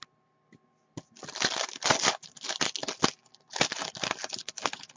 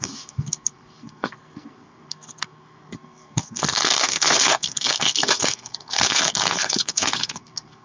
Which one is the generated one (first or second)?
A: second